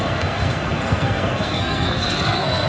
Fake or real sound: fake